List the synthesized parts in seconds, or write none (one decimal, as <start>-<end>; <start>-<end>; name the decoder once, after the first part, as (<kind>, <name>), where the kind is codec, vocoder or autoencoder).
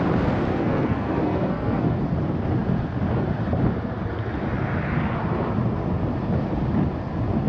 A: 0.5-2.0 (codec, SNAC)